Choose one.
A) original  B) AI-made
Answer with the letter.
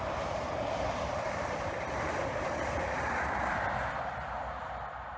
B